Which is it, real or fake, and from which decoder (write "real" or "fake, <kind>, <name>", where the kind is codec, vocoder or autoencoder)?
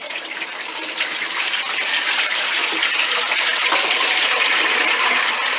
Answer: fake, vocoder, BigVGAN v2